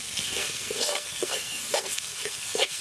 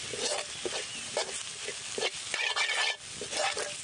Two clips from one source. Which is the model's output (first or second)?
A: first